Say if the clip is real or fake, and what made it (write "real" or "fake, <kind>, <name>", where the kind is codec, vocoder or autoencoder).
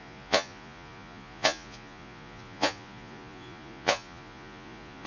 fake, vocoder, Vocos